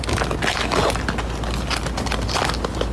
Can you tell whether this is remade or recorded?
recorded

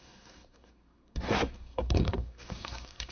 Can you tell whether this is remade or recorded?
remade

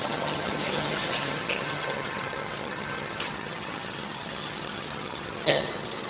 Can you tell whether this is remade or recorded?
remade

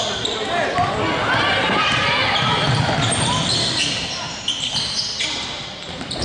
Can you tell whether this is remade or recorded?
recorded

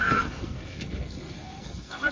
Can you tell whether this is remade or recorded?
remade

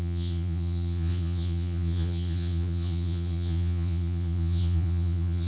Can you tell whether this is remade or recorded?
remade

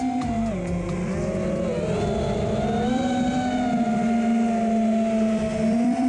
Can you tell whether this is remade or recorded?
recorded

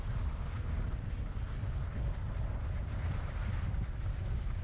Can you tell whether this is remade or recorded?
recorded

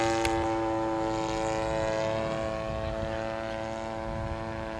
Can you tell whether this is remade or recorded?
recorded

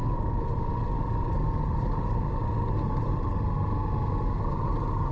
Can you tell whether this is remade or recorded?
recorded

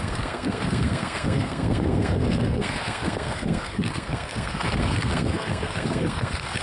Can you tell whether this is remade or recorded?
remade